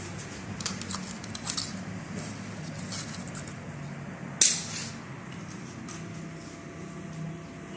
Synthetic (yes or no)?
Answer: no